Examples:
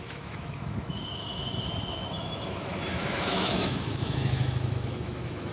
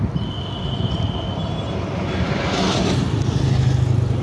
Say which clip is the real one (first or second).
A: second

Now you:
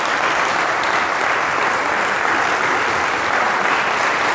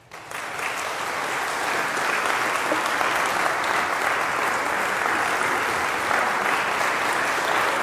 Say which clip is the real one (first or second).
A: second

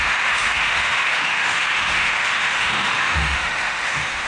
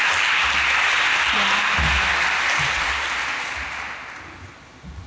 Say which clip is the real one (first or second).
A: second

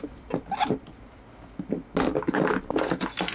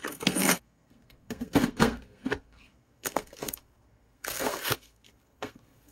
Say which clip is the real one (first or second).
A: first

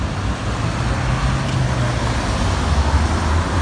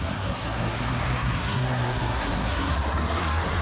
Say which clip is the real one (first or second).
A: first